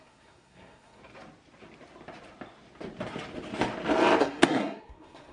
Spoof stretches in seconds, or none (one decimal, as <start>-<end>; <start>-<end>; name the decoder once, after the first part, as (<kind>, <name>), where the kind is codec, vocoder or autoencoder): 0.0-1.0 (codec, SNAC); 4.2-5.3